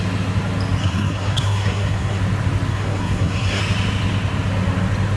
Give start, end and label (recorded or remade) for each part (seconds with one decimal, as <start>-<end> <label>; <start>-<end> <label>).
0.0-0.8 recorded; 0.8-2.2 remade; 2.2-2.7 recorded; 2.7-3.6 remade; 3.6-5.2 recorded